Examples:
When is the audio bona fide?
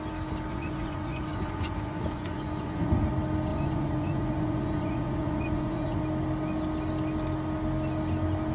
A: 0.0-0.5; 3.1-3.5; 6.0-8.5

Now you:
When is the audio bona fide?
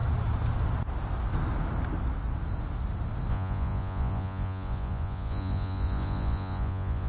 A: 0.0-3.3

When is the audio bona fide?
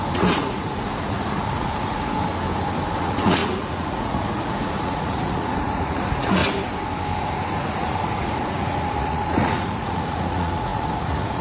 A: 2.2-3.0; 6.4-7.2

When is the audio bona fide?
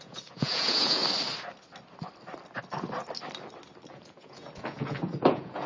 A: 1.0-3.9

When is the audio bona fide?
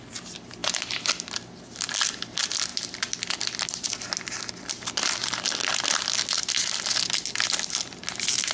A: 0.0-8.5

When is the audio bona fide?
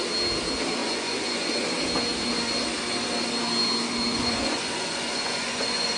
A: 0.0-0.8; 1.5-4.1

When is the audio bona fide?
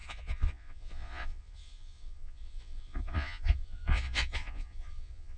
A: none